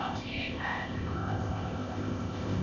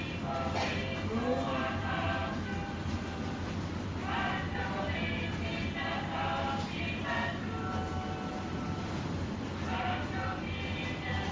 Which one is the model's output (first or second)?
first